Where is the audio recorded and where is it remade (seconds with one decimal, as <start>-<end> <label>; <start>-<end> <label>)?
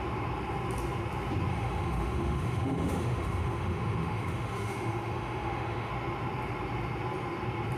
0.0-1.5 recorded; 1.5-5.9 remade; 5.9-7.8 recorded